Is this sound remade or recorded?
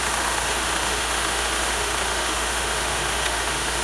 remade